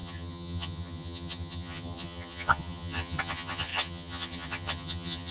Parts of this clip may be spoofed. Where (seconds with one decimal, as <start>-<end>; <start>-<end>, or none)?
0.0-5.3

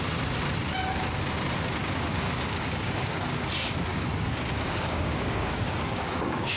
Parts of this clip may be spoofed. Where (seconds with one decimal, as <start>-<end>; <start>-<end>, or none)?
1.8-3.4; 3.9-6.6

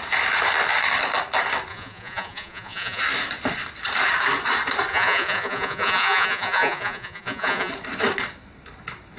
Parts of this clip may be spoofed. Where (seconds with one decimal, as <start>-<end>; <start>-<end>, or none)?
1.7-3.0; 4.9-7.7

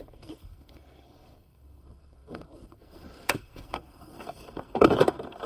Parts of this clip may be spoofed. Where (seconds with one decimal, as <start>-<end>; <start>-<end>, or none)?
0.0-5.5

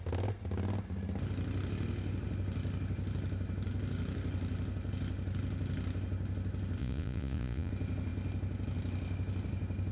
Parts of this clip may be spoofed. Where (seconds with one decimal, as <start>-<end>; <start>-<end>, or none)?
6.8-7.7

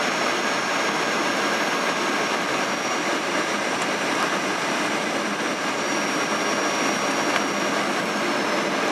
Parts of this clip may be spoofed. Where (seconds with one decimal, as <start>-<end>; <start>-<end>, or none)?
3.1-5.1

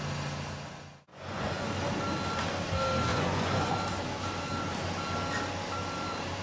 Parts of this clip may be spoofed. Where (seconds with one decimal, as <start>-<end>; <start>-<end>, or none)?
1.1-1.7; 3.1-3.7